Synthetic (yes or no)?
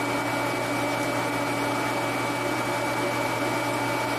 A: no